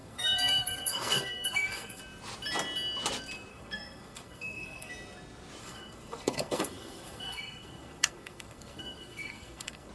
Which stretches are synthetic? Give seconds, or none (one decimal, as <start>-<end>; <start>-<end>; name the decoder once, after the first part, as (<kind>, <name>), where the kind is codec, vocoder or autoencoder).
0.0-2.0 (codec, SNAC); 3.5-4.9; 5.6-9.9